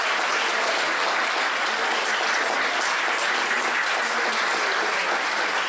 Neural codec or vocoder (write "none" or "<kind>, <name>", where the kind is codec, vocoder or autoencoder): none